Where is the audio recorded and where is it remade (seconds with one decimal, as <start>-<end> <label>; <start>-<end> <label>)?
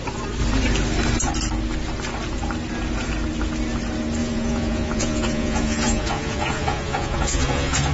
0.0-4.2 recorded; 4.2-7.9 remade